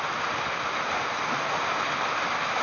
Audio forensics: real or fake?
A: real